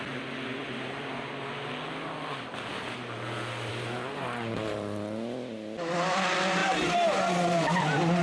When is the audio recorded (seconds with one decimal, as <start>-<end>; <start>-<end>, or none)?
0.0-6.6